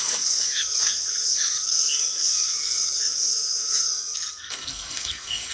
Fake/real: fake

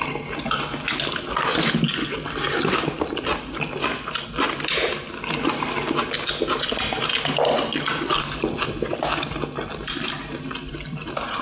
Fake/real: real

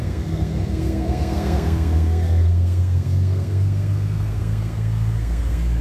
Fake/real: fake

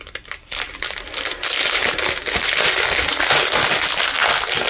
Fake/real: real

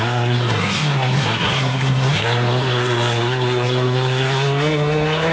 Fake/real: fake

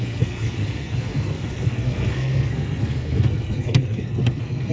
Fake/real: fake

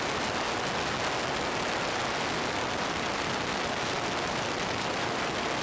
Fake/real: real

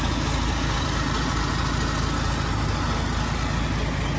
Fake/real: real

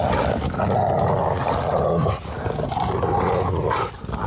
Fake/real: real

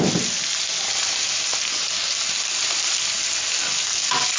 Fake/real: real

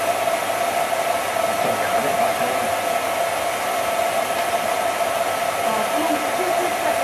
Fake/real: real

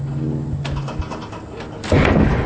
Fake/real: real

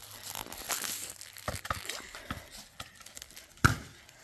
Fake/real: real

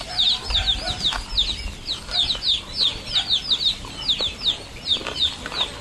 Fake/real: real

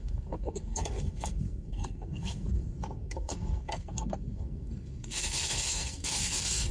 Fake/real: fake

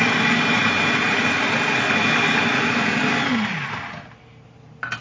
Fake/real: real